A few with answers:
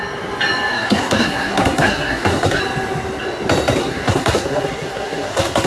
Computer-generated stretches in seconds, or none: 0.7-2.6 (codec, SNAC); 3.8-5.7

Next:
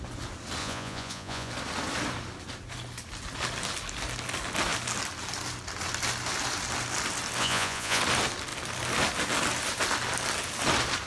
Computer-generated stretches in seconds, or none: 0.6-1.5 (vocoder, Vocos); 7.4-8.0